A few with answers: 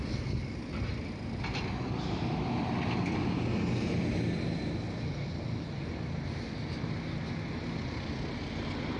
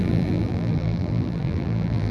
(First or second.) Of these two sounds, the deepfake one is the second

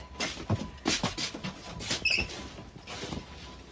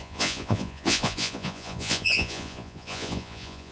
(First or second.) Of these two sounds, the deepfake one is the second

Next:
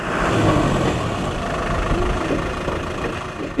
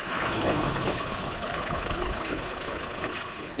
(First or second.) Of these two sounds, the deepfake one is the second